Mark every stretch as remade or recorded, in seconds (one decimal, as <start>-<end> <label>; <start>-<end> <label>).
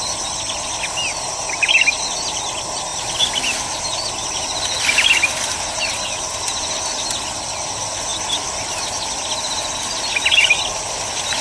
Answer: 0.0-11.4 recorded